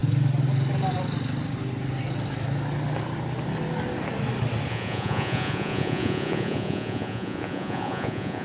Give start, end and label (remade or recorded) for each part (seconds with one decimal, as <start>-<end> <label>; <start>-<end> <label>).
0.0-4.7 recorded; 4.7-8.4 remade